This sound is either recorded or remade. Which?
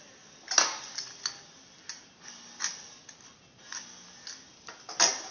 recorded